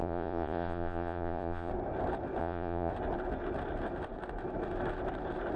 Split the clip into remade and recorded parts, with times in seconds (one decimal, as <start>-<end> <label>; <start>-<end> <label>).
0.0-1.7 remade; 1.7-2.4 recorded; 2.4-2.9 remade; 2.9-5.6 recorded